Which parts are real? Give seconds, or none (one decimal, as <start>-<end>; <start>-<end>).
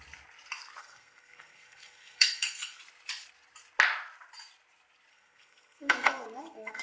0.0-0.8; 2.8-5.1